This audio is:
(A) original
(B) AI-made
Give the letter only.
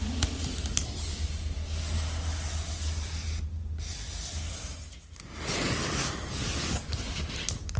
A